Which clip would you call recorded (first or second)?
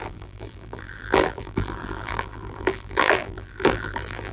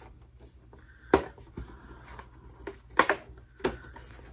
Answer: second